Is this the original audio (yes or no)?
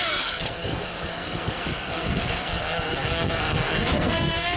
no